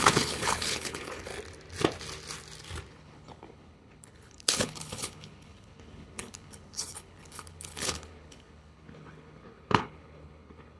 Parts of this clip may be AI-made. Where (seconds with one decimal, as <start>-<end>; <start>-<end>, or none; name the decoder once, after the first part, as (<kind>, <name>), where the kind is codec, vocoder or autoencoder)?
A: 0.0-1.3 (codec, HILCodec); 2.9-10.8